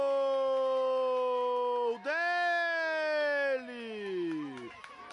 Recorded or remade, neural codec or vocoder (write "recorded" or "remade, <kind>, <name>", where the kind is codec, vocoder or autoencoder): recorded